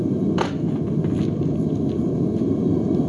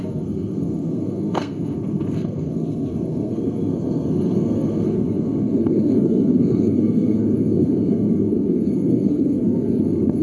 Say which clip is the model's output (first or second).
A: second